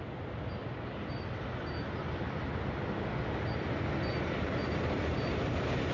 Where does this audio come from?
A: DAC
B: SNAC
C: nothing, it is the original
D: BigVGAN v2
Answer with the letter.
C